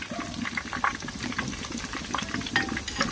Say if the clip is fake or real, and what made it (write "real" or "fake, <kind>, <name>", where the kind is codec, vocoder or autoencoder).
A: real